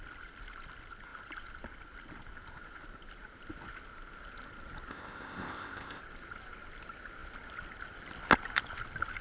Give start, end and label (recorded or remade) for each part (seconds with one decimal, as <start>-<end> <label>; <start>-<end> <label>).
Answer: 0.0-4.9 recorded; 4.9-6.0 remade; 6.0-9.2 recorded